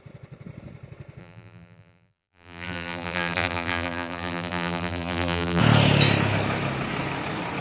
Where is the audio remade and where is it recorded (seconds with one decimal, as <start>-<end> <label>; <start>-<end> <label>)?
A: 0.0-1.2 recorded; 1.2-5.6 remade; 5.6-7.6 recorded

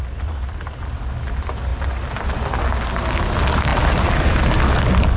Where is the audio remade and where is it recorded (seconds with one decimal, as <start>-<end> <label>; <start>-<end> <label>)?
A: 0.0-3.7 recorded; 3.7-4.5 remade; 4.5-5.2 recorded

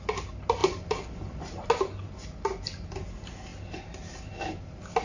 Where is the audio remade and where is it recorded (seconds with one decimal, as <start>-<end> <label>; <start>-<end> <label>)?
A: 0.0-0.6 recorded; 0.6-1.7 remade; 1.7-3.5 recorded; 3.5-4.2 remade; 4.2-5.0 recorded

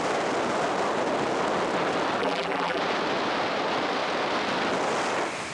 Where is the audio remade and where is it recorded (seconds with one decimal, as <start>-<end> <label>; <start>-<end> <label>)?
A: 0.0-2.2 recorded; 2.2-2.8 remade; 2.8-5.5 recorded

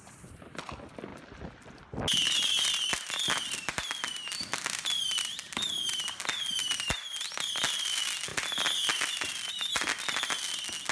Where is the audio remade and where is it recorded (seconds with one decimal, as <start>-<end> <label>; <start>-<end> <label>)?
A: 0.0-10.9 recorded